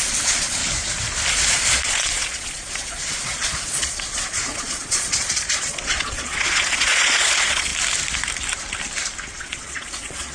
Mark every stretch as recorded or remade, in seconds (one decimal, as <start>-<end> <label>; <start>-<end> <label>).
0.0-0.6 remade; 0.6-1.3 recorded; 1.3-7.7 remade; 7.7-9.4 recorded; 9.4-10.3 remade